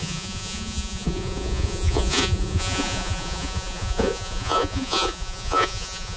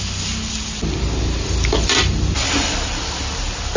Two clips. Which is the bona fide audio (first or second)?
second